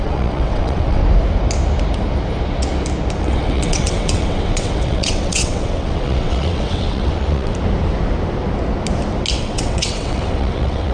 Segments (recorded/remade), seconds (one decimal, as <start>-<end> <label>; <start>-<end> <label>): 0.0-1.0 remade; 1.0-3.2 recorded; 3.2-7.5 remade; 7.5-9.4 recorded; 9.4-10.9 remade